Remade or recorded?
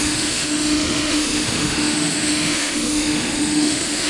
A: remade